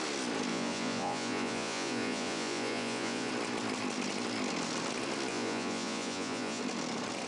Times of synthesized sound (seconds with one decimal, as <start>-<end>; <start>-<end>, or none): 0.5-3.3; 5.3-6.6